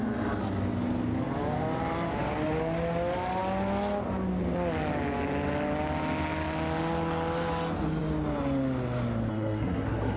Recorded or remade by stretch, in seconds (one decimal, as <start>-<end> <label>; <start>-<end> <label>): 0.0-9.3 recorded; 9.3-10.2 remade